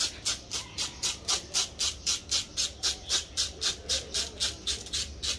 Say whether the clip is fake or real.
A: real